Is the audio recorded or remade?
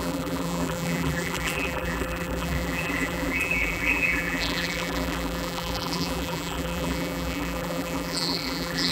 remade